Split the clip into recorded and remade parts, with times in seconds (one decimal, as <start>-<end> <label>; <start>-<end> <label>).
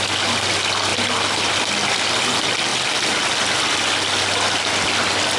0.0-5.4 recorded